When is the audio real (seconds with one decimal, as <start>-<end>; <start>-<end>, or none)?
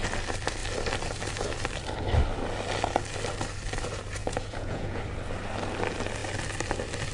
0.0-4.2; 5.0-7.1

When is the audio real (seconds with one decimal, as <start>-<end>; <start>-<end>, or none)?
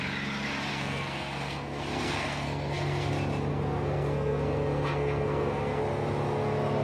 0.0-0.7; 3.1-3.5; 5.8-6.8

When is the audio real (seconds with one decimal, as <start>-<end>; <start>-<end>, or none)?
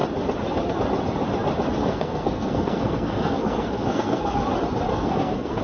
0.0-1.8; 4.4-4.9